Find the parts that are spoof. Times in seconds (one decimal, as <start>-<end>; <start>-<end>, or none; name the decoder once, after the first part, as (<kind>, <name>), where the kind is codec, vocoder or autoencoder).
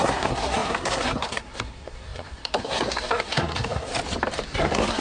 0.0-3.9 (codec, SNAC); 4.6-5.0